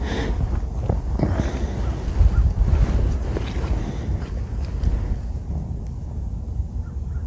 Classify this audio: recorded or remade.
recorded